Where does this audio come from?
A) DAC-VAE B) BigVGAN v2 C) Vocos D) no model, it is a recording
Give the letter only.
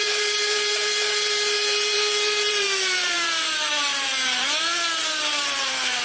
B